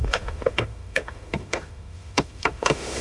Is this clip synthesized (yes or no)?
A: yes